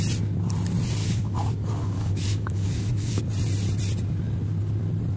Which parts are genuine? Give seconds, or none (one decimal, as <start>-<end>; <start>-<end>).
0.0-1.0; 3.2-5.2